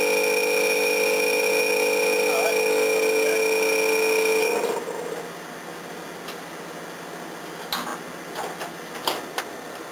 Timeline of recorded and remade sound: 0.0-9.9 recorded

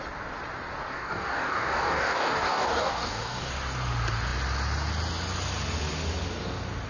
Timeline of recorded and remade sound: 0.0-0.9 recorded; 0.9-3.5 remade; 3.5-6.9 recorded

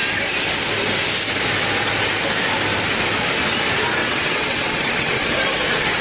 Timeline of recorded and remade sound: 0.0-4.0 recorded; 4.0-5.3 remade; 5.3-6.0 recorded

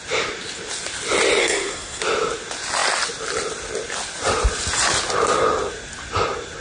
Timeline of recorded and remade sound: 0.0-1.4 recorded; 1.4-2.0 remade; 2.0-6.6 recorded

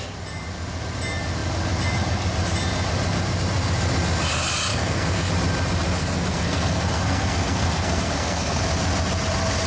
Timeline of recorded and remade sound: 0.0-4.7 recorded; 4.7-5.3 remade; 5.3-6.0 recorded; 6.0-8.6 remade; 8.6-9.7 recorded

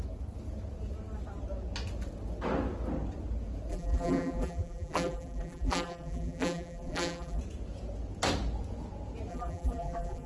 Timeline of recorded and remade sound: 0.0-3.7 recorded; 3.7-7.4 remade; 7.4-9.3 recorded; 9.3-10.3 remade

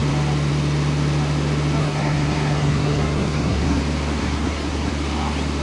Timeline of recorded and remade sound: 0.0-1.8 recorded; 1.8-3.8 remade; 3.8-4.2 recorded; 4.2-4.9 remade; 4.9-5.6 recorded

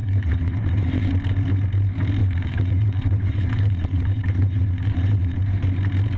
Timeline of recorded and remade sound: 0.0-1.1 remade; 1.1-2.2 recorded; 2.2-5.4 remade; 5.4-6.2 recorded